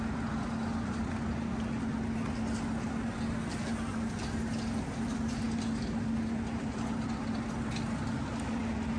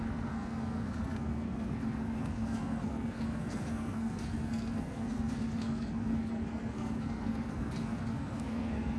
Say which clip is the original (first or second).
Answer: first